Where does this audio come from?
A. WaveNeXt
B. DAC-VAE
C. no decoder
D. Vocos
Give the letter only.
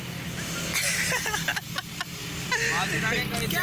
C